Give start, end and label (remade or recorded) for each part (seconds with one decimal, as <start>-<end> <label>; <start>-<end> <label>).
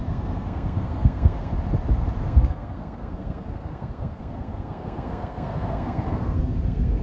0.0-1.5 remade; 1.5-2.2 recorded; 2.2-7.0 remade